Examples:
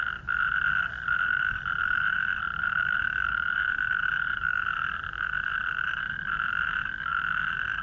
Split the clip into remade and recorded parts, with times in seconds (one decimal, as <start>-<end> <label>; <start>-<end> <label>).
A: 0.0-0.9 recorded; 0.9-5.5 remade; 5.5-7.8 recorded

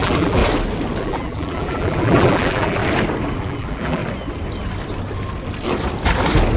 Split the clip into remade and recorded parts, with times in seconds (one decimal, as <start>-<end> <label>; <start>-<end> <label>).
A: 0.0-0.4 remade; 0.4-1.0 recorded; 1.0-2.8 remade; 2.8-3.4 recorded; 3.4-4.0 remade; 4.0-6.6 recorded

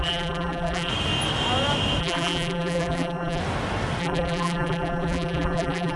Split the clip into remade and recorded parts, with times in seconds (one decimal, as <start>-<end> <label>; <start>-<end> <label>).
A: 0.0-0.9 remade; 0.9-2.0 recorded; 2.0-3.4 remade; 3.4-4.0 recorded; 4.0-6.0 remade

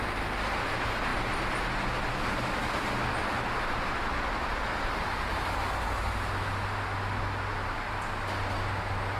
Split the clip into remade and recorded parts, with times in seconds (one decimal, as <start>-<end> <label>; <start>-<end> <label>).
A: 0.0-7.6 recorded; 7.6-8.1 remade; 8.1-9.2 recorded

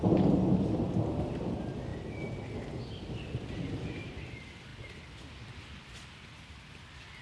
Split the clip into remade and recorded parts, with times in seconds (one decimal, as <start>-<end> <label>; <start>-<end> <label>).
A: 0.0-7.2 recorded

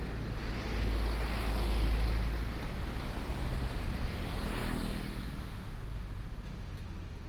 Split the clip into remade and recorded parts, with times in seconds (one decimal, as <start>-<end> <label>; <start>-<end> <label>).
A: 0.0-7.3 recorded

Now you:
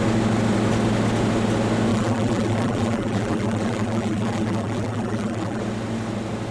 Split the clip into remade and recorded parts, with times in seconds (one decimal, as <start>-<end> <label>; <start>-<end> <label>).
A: 0.0-1.9 recorded; 1.9-5.6 remade; 5.6-6.5 recorded

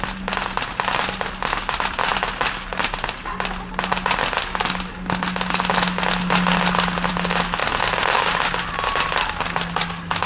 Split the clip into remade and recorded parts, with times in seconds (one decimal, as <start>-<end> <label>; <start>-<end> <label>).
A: 0.0-7.6 recorded; 7.6-8.2 remade; 8.2-10.3 recorded